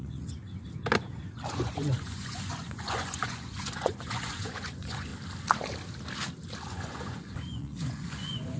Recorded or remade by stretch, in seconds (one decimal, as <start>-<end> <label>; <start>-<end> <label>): 0.0-0.4 remade; 0.4-1.5 recorded; 1.5-5.1 remade; 5.1-6.7 recorded; 6.7-8.6 remade